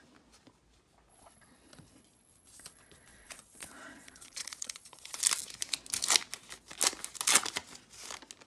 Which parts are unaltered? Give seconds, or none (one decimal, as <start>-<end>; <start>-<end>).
0.0-1.1; 5.2-8.5

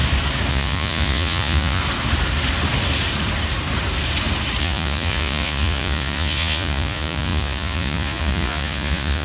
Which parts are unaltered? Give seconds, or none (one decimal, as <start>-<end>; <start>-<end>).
0.0-0.5; 1.8-4.6

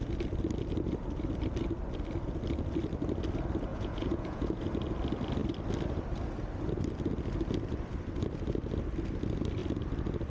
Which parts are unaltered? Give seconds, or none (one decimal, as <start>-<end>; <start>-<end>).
0.0-3.7; 4.6-10.3

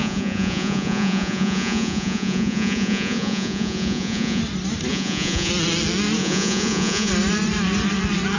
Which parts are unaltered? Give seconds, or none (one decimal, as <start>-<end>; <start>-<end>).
4.4-4.9; 5.5-6.2; 7.1-8.4

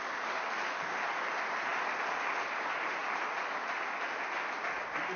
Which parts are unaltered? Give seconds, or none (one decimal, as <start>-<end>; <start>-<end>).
0.0-5.2

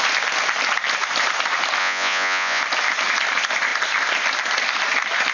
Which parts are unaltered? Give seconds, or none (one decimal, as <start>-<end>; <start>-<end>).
0.0-1.8; 2.6-5.3